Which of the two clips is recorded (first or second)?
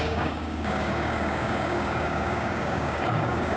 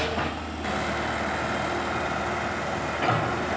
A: second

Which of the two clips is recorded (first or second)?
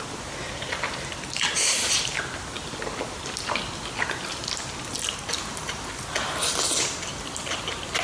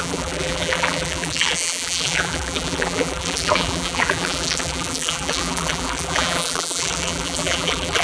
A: first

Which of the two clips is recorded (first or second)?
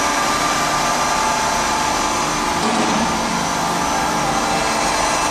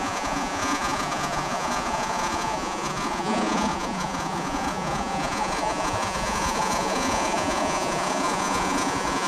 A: first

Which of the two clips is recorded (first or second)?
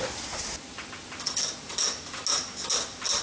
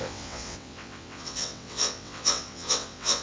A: first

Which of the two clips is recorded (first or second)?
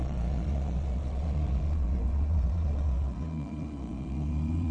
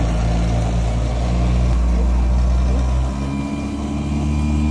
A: second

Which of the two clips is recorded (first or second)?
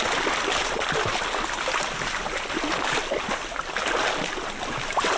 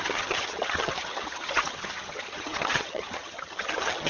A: first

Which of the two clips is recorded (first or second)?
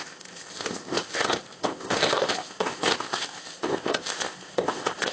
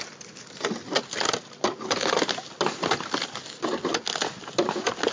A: second